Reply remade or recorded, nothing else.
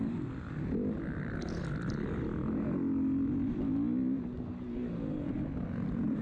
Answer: recorded